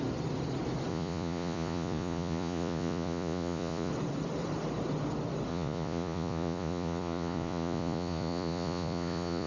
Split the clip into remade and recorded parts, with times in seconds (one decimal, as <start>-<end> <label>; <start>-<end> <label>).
0.0-0.9 recorded; 0.9-3.9 remade; 3.9-5.5 recorded; 5.5-9.5 remade